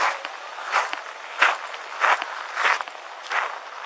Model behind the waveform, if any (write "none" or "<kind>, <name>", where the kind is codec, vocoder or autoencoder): none